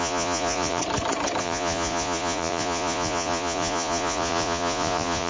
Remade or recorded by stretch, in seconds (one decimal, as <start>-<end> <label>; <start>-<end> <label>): 0.0-0.8 remade; 0.8-1.4 recorded; 1.4-5.3 remade

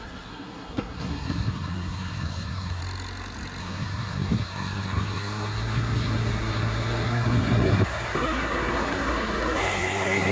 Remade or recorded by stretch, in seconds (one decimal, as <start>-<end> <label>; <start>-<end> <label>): 0.0-2.8 remade; 2.8-3.6 recorded; 3.6-10.3 remade

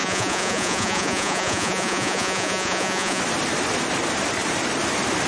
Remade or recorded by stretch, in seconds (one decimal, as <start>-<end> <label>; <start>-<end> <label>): 0.0-3.2 remade; 3.2-5.3 recorded

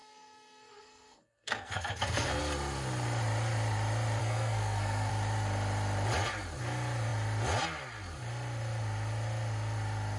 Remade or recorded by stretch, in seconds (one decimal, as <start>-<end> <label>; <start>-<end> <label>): 0.0-2.4 remade; 2.4-4.2 recorded; 4.2-5.1 remade; 5.1-10.2 recorded

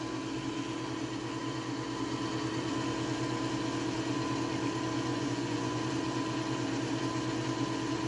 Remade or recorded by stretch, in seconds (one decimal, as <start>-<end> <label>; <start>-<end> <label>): 0.0-5.1 recorded; 5.1-5.8 remade; 5.8-8.1 recorded

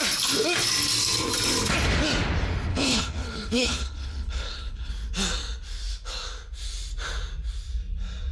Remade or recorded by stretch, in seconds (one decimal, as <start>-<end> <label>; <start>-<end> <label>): 0.0-2.7 recorded; 2.7-4.9 remade; 4.9-8.3 recorded

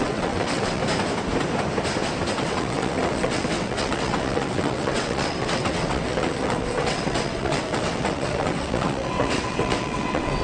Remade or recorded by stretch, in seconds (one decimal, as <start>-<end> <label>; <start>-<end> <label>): 0.0-0.8 remade; 0.8-2.3 recorded; 2.3-10.4 remade

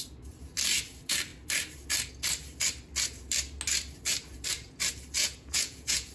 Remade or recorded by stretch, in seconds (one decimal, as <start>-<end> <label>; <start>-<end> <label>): 0.0-5.2 recorded; 5.2-6.1 remade